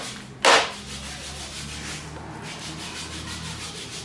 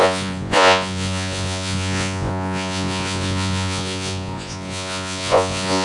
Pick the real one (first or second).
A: first